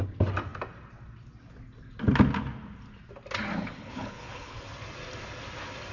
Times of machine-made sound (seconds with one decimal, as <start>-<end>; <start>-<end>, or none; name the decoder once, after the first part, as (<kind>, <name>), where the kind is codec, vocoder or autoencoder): 3.5-4.6 (codec, HILCodec)